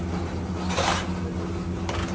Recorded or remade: recorded